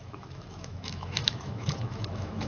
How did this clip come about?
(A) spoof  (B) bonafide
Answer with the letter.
A